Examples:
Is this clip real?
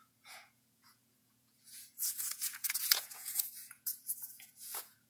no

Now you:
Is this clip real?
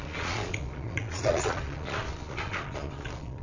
no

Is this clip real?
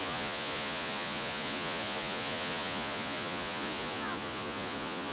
no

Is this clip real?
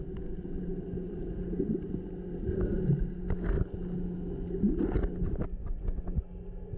yes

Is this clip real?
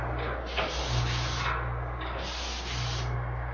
yes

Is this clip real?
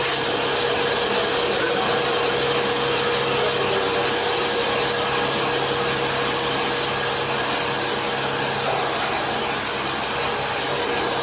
yes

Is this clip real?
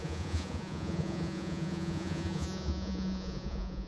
no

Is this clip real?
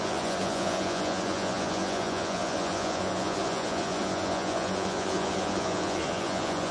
no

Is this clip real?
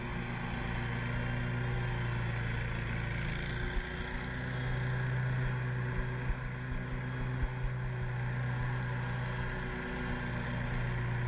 yes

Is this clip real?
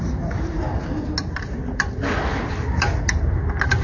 yes